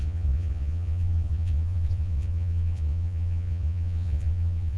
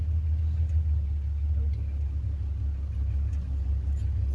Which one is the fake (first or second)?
first